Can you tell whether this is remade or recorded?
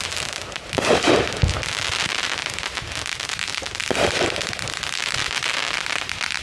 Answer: recorded